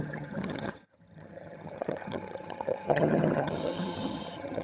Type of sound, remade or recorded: remade